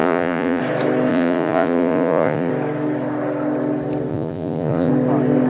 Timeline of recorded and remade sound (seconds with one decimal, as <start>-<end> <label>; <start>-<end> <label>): 0.0-0.6 remade; 0.6-1.1 recorded; 1.1-2.5 remade; 2.5-4.1 recorded; 4.1-4.9 remade; 4.9-5.5 recorded